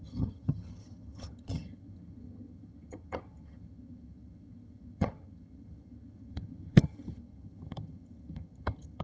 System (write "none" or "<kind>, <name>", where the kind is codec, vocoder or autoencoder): vocoder, HiFi-GAN